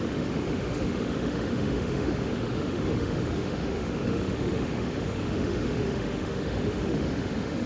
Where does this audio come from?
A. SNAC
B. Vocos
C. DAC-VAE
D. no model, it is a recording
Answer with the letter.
C